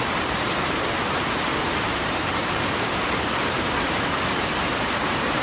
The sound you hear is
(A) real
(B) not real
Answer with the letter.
B